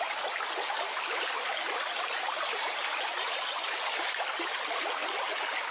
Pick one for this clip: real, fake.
real